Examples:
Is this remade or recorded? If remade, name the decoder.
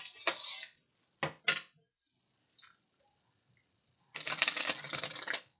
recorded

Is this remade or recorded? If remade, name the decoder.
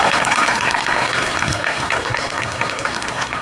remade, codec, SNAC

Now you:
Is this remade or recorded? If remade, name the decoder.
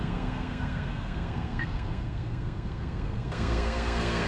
remade, codec, SNAC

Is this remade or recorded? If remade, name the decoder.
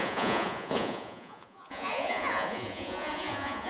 remade, vocoder, Vocos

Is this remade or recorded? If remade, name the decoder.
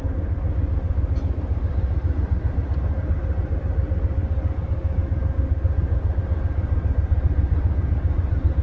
recorded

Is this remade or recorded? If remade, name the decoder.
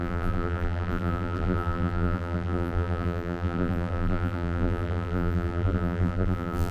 remade, vocoder, BigVGAN v2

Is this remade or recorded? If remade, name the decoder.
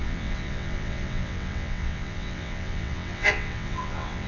remade, vocoder, WaveNeXt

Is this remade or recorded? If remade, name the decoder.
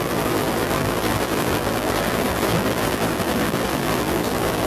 remade, vocoder, BigVGAN v2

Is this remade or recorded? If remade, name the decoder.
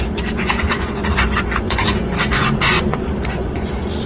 remade, vocoder, Vocos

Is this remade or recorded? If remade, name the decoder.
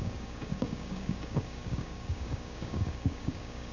remade, codec, DAC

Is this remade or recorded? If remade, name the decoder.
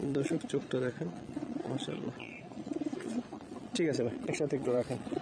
remade, vocoder, Vocos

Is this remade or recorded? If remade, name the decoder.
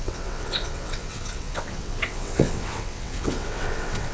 remade, vocoder, WaveNeXt